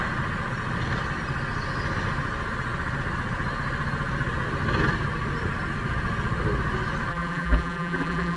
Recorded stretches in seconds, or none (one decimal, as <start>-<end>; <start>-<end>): 0.0-7.1